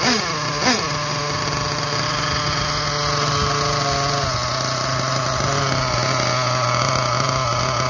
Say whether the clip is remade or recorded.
recorded